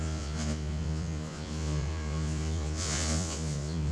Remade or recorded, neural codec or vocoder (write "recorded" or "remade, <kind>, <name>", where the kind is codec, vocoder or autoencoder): remade, vocoder, Vocos